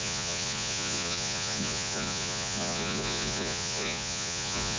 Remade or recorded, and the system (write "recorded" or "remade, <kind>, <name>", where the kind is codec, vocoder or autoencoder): remade, vocoder, Vocos